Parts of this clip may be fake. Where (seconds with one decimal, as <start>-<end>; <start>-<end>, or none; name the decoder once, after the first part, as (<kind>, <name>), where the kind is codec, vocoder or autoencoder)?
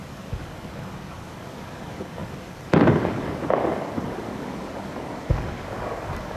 0.0-6.4 (codec, DAC)